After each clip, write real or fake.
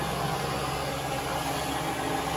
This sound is real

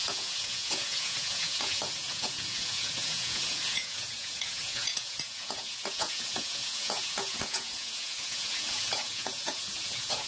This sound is fake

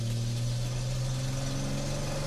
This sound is real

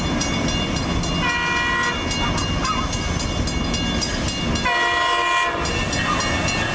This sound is real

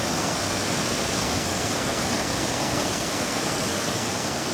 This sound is fake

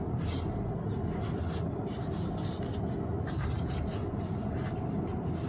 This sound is real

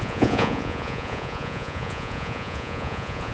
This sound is fake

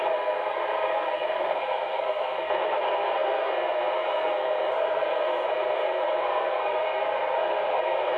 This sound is fake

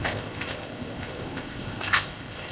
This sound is fake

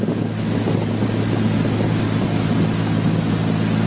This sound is real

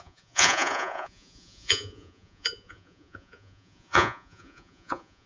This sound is fake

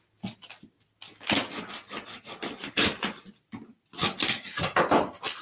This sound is real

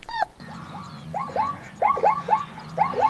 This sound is fake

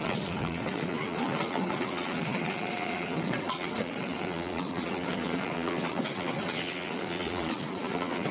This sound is fake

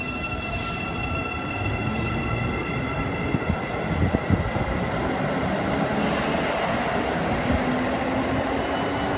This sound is real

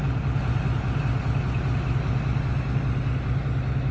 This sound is real